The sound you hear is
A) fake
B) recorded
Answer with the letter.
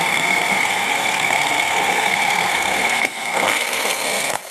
A